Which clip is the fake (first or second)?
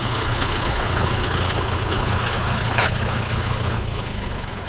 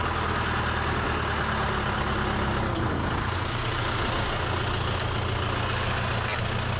first